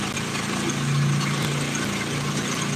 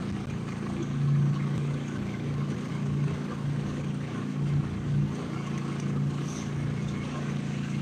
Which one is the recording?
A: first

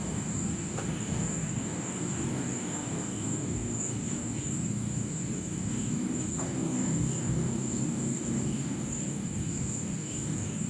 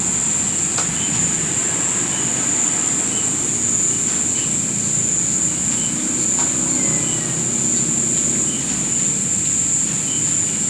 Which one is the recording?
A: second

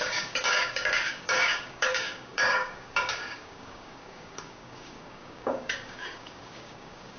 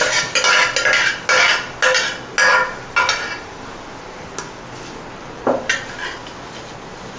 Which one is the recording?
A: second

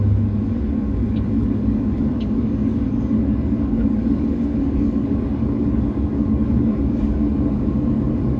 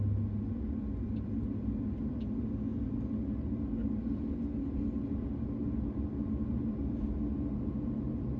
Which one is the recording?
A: second